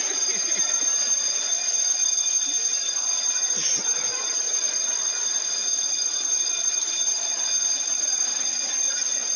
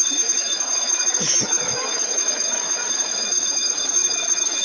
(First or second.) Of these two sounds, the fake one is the second